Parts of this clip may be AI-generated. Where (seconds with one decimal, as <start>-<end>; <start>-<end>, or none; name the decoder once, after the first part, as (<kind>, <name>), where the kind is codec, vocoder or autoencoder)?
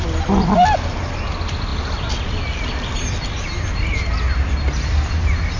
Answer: none